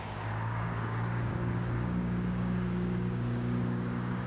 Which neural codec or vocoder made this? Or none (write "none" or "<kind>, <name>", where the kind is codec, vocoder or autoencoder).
codec, DAC